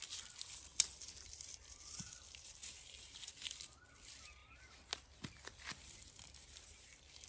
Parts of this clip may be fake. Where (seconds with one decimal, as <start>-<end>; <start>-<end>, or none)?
none